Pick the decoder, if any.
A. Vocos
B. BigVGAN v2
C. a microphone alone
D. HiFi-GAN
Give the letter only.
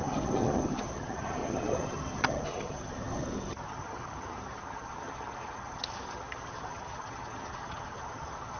D